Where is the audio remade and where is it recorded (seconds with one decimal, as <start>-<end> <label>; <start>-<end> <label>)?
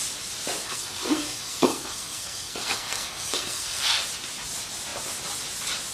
0.0-0.6 recorded; 0.6-4.0 remade; 4.0-5.9 recorded